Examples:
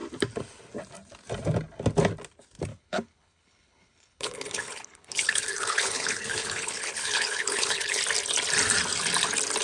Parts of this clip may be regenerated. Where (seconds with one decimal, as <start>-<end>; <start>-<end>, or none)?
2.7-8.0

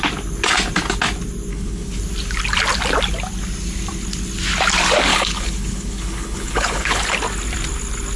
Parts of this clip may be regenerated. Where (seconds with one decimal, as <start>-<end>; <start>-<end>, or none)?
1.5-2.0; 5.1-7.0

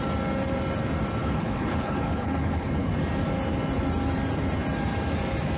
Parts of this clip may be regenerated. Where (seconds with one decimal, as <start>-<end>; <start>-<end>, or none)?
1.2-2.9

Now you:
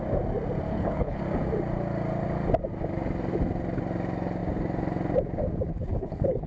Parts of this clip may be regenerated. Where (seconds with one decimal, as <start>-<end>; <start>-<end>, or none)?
0.7-1.2; 5.7-6.5

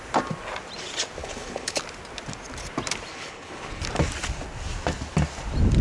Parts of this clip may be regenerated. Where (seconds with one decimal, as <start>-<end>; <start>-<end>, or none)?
1.2-1.8; 3.1-3.8

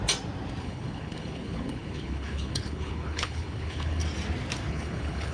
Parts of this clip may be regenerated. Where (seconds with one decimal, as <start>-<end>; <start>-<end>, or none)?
0.6-4.0; 4.7-5.3

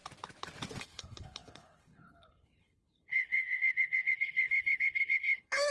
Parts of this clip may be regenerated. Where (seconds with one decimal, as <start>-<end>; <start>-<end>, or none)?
0.8-5.7